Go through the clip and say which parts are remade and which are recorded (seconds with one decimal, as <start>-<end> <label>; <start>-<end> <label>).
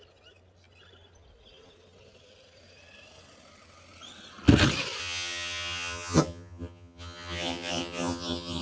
0.0-5.0 recorded; 5.0-8.6 remade